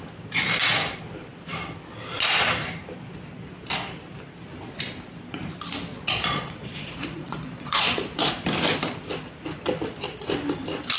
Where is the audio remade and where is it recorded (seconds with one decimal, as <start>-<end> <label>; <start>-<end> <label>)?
0.0-5.9 recorded; 5.9-8.3 remade; 8.3-11.0 recorded